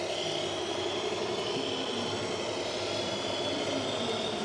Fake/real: real